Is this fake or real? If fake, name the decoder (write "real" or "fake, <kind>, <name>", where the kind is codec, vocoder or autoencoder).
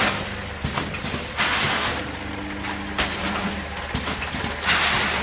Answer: real